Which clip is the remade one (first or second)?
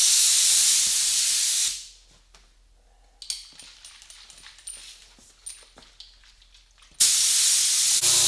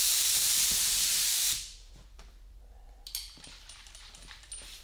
second